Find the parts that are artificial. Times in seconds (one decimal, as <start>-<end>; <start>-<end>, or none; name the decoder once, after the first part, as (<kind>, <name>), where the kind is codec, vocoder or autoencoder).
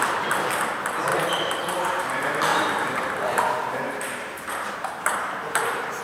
1.1-2.0 (vocoder, BigVGAN v2); 2.5-6.0